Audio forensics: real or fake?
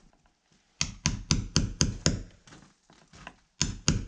real